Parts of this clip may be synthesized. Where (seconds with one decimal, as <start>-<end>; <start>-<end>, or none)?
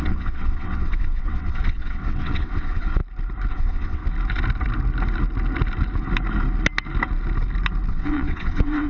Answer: 0.0-3.0; 3.5-4.0; 7.9-8.9